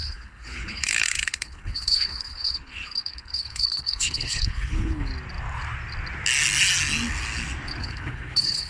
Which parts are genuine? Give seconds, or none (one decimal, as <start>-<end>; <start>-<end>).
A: 5.1-7.8